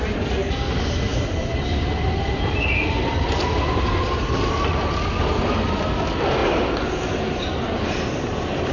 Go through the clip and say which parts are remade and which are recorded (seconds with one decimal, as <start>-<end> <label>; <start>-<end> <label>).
0.0-8.7 recorded